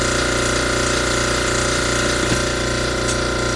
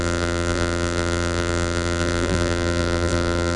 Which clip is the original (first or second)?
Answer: first